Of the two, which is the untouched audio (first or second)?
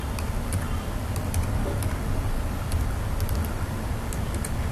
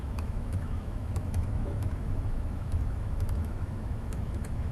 first